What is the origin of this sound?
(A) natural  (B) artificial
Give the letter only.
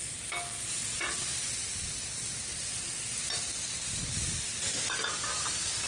A